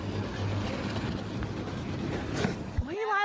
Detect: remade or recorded recorded